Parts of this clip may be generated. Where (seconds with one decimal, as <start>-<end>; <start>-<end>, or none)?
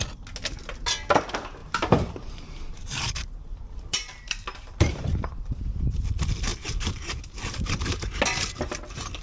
1.6-5.6; 6.5-8.2